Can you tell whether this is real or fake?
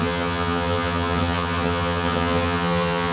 fake